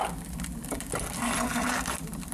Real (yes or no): yes